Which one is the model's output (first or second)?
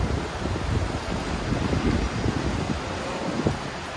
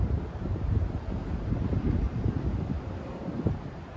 second